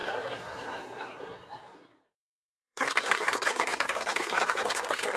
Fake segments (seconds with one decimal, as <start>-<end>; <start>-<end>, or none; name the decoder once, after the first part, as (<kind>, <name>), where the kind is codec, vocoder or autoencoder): 0.0-5.2 (codec, SNAC)